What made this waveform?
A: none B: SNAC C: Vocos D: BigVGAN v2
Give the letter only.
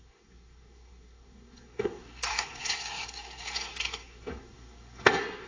B